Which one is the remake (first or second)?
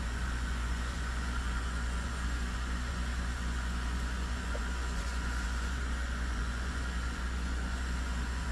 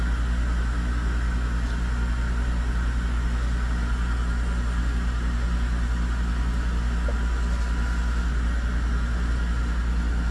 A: first